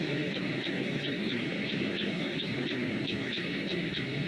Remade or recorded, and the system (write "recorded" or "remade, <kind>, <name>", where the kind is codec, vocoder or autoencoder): remade, codec, SNAC